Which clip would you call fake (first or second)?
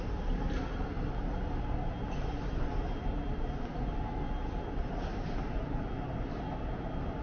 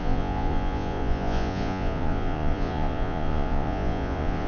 second